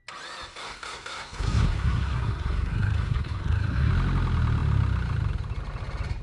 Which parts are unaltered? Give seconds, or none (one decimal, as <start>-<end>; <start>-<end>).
0.0-0.6; 3.9-6.2